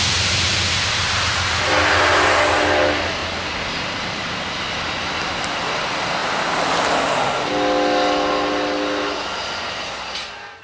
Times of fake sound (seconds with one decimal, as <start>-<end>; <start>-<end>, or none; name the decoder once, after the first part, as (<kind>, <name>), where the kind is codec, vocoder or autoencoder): none